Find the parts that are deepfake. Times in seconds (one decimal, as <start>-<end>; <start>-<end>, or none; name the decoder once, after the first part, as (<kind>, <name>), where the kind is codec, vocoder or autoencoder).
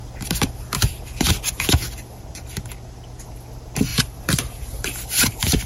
3.9-5.7 (vocoder, BigVGAN v2)